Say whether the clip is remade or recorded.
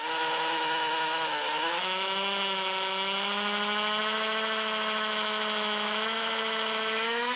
remade